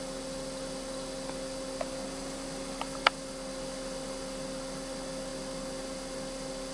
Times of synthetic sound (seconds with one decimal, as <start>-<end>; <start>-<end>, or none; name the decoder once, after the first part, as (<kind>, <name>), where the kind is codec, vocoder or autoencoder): none